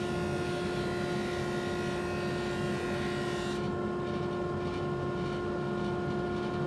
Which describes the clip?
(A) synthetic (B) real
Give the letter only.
B